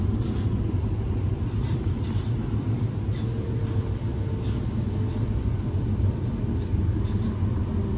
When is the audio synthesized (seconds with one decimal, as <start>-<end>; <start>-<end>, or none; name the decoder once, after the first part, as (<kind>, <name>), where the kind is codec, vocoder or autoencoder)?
0.0-4.1 (vocoder, BigVGAN v2); 4.8-8.0